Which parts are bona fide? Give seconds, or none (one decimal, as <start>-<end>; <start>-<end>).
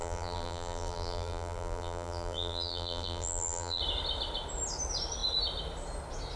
3.8-6.4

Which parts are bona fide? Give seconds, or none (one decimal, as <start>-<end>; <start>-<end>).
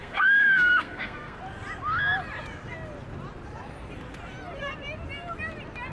1.4-5.9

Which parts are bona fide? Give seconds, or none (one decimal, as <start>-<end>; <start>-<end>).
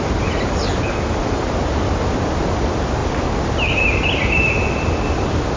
0.0-5.6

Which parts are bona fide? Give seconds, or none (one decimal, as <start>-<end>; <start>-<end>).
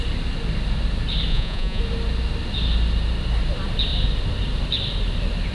0.0-1.3; 1.8-5.5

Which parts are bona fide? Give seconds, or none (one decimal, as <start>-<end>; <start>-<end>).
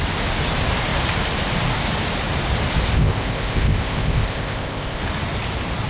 0.0-2.9; 5.0-5.9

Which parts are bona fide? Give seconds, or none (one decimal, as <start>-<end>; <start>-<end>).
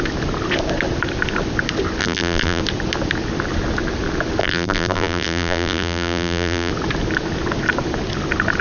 0.0-2.0; 2.6-4.4; 6.7-8.6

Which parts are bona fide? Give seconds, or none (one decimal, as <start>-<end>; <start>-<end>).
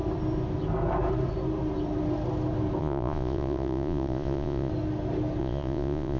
0.0-2.8; 4.7-5.4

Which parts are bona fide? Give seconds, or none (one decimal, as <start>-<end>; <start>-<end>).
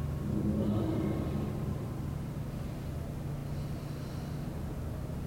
0.0-0.9; 2.7-5.3